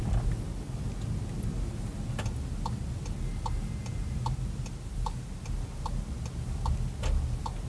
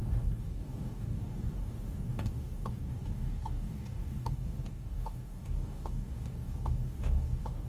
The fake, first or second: second